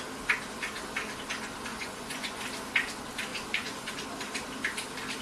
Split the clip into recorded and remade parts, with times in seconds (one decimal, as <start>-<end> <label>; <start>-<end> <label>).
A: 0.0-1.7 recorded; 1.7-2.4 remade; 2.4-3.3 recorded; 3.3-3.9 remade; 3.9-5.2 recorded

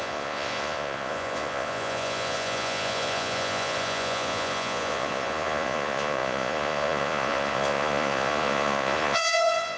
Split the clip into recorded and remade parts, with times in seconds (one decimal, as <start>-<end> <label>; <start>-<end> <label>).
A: 0.0-9.8 remade

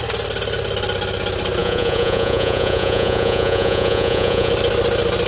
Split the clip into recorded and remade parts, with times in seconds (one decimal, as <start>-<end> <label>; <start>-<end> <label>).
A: 0.0-1.6 recorded; 1.6-4.5 remade; 4.5-5.3 recorded

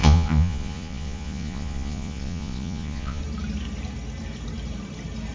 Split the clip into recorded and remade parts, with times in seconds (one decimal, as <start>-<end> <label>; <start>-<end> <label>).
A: 0.0-3.2 remade; 3.2-5.3 recorded